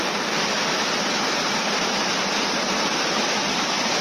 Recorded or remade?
recorded